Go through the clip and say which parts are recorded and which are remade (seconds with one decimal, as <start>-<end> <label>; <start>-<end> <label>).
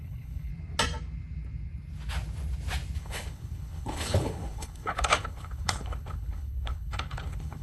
0.0-0.5 remade; 0.5-3.0 recorded; 3.0-7.6 remade